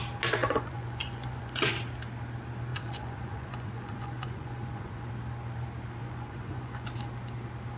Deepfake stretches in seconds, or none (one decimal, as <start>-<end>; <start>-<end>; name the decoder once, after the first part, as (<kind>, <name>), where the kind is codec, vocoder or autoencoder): 0.4-1.7 (vocoder, Vocos); 2.7-5.1; 6.0-6.9